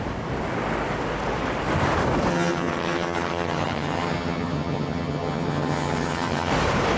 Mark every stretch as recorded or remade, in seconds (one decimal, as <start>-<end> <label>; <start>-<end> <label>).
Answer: 0.0-2.3 recorded; 2.3-6.5 remade; 6.5-7.0 recorded